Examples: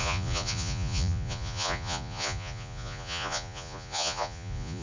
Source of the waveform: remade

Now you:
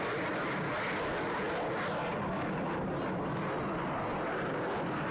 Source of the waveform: recorded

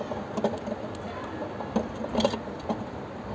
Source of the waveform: recorded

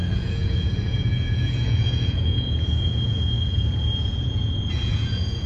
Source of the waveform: remade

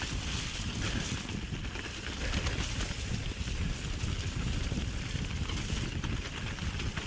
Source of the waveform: recorded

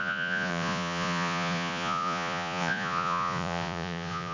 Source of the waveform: remade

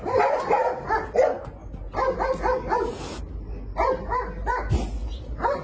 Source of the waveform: recorded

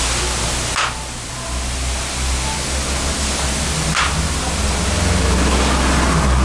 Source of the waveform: recorded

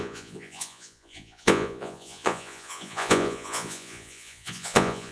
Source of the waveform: remade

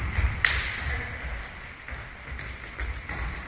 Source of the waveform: recorded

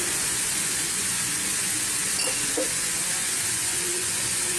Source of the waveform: remade